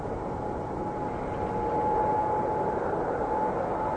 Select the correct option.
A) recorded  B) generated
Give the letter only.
A